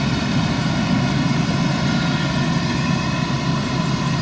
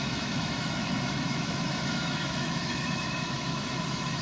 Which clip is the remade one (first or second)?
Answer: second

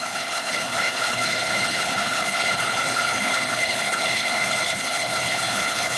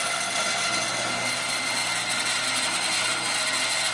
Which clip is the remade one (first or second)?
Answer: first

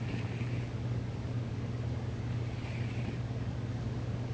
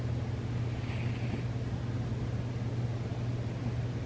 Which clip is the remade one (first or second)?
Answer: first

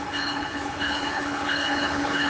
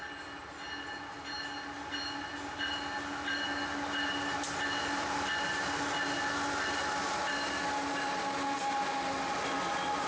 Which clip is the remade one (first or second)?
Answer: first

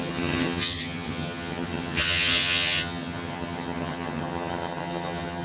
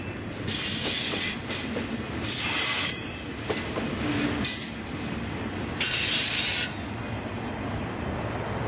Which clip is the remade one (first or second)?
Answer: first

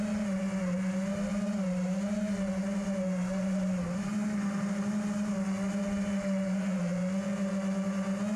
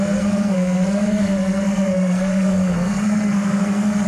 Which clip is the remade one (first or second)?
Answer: second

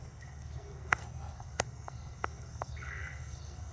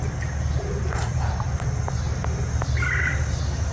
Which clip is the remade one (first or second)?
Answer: first